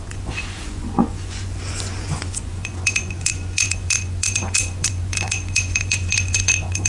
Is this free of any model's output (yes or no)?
no